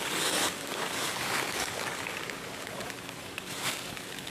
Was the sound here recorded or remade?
remade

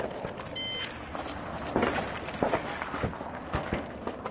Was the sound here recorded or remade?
recorded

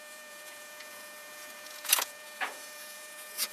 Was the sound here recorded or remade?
remade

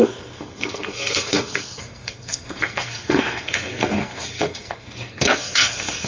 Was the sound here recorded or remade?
remade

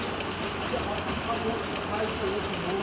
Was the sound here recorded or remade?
recorded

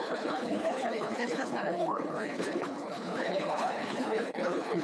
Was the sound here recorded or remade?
remade